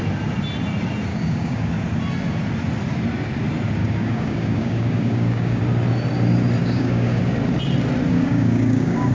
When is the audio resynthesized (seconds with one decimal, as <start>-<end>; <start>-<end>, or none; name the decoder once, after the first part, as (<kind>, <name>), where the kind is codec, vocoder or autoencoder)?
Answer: 1.1-1.7 (codec, DAC); 3.8-5.6; 6.6-7.2; 8.1-9.1

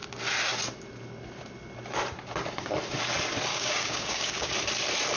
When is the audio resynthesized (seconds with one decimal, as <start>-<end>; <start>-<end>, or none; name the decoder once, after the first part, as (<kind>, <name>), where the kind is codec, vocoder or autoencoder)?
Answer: 3.5-4.5 (codec, DAC)

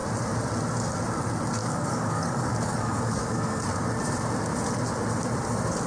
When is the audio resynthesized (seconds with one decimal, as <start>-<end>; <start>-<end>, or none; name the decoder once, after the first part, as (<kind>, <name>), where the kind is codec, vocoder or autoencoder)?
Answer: 1.6-3.6 (codec, DAC)

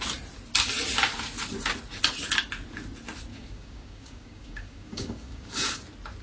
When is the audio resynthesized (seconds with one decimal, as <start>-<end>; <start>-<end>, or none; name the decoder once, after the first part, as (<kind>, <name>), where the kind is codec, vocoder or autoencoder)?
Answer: 3.3-5.8 (codec, DAC)

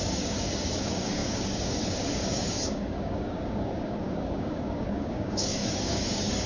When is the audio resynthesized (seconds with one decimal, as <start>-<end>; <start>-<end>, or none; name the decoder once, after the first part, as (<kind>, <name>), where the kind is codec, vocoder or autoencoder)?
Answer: 0.0-6.5 (codec, DAC)

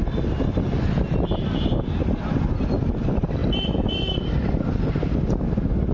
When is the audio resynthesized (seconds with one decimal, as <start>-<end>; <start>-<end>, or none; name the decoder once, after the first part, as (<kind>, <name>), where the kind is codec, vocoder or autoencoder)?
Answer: none